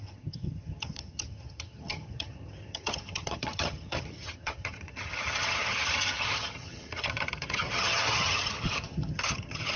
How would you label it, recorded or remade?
remade